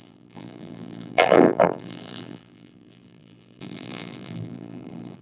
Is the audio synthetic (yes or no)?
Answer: yes